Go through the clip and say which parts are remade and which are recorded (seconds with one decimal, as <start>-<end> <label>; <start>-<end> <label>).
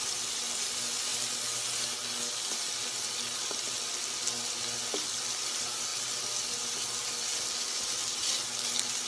0.0-9.1 recorded